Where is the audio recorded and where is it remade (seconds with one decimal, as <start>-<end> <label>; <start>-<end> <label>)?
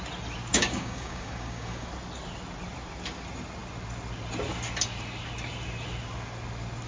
0.0-0.5 recorded; 0.5-1.9 remade; 1.9-6.9 recorded